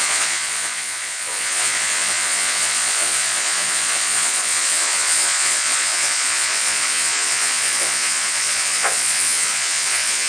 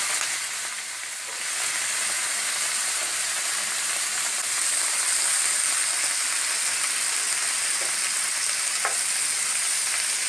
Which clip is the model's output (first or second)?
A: first